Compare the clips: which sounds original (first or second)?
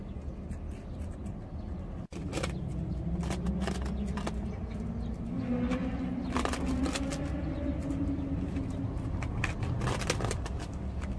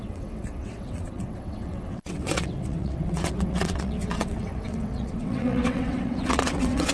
first